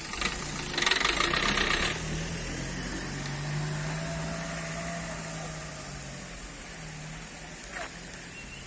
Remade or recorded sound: recorded